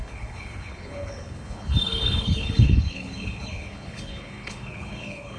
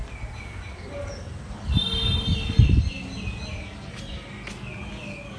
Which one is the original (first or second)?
second